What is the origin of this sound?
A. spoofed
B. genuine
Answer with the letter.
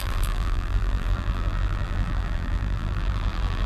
A